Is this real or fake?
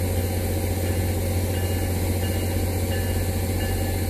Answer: real